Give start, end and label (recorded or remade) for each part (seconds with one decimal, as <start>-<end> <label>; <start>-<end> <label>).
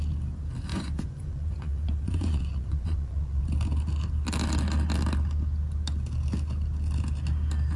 0.0-0.7 recorded; 0.7-3.4 remade; 3.4-7.8 recorded